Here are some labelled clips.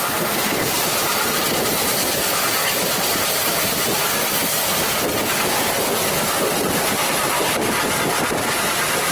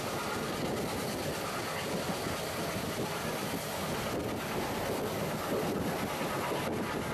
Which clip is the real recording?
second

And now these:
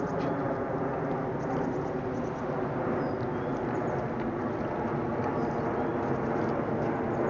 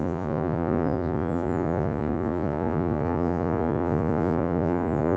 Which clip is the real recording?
first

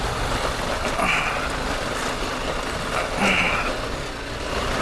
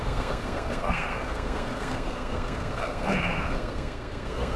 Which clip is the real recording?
first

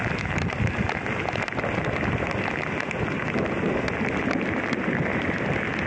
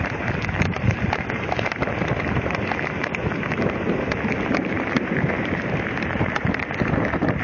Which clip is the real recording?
first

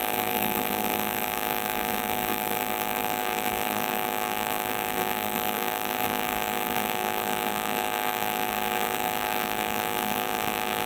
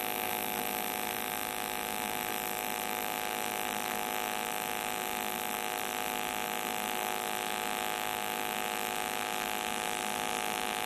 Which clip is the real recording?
second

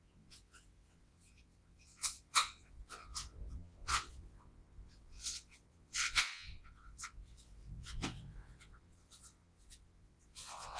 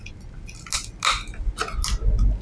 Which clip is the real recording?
second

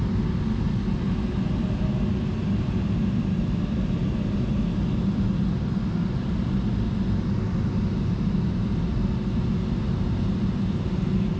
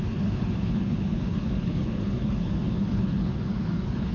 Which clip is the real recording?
first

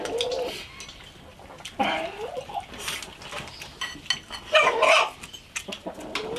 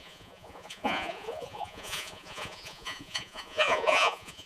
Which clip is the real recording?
first